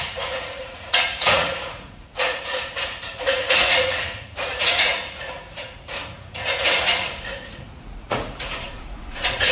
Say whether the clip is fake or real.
fake